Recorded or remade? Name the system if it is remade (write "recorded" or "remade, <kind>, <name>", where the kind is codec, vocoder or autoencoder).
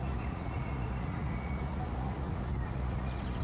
remade, vocoder, Vocos